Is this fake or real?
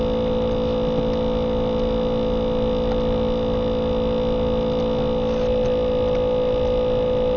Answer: real